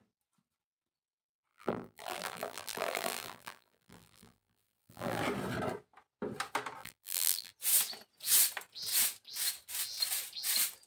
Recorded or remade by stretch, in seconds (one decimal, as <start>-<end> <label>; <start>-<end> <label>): 0.0-1.5 recorded; 1.5-5.2 remade; 5.2-6.8 recorded; 6.8-7.5 remade; 7.5-10.9 recorded